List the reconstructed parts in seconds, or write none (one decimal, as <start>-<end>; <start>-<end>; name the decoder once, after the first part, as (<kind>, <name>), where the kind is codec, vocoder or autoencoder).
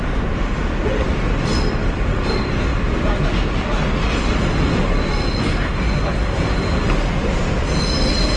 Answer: 1.5-2.1 (vocoder, BigVGAN v2); 2.7-3.2